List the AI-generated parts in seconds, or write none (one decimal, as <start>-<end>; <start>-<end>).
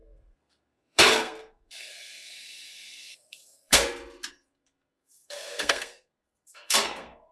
0.0-3.8; 4.3-7.3